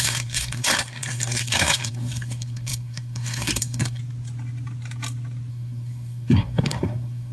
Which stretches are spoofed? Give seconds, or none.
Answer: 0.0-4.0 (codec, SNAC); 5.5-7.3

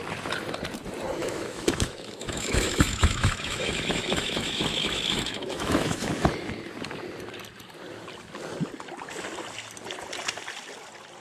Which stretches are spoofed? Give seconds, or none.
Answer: 1.2-6.1 (autoencoder, DAC-VAE)